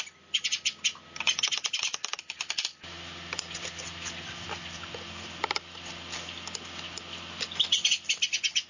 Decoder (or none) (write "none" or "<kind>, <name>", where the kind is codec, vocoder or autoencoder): none